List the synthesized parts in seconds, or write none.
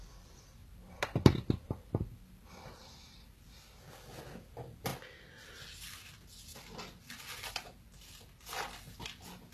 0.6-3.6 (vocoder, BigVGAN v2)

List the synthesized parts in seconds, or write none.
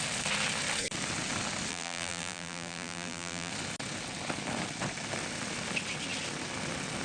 1.7-3.5 (vocoder, BigVGAN v2)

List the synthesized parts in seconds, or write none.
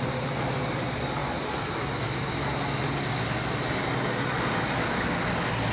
none